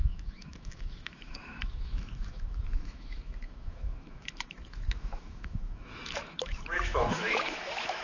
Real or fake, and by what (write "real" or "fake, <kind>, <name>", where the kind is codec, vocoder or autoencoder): fake, autoencoder, DAC-VAE